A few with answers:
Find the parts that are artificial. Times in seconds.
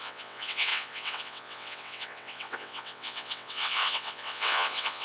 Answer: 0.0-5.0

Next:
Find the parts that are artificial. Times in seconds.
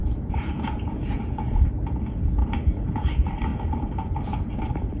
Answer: 0.0-1.6; 2.4-3.1